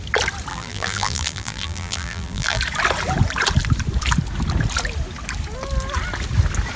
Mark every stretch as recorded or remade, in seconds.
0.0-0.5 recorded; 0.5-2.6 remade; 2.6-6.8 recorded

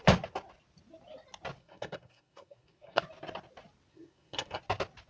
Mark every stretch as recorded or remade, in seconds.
0.0-1.6 recorded; 1.6-3.0 remade; 3.0-3.9 recorded; 3.9-4.6 remade; 4.6-5.1 recorded

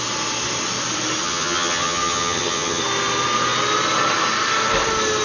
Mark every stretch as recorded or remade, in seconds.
0.0-1.2 recorded; 1.2-2.8 remade; 2.8-5.2 recorded

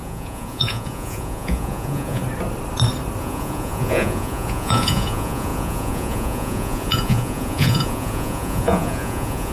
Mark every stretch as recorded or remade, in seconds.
0.0-2.2 remade; 2.2-3.2 recorded; 3.2-9.5 remade